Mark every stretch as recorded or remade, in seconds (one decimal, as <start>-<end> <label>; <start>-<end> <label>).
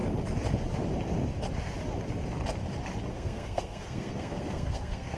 0.0-3.1 recorded; 3.1-5.2 remade